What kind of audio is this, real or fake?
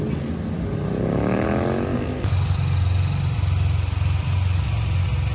real